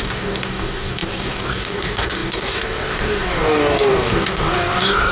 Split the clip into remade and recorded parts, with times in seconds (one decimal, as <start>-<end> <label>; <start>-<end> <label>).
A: 0.0-5.1 remade